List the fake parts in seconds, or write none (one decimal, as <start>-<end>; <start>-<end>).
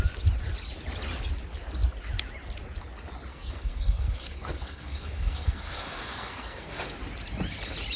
3.3-7.0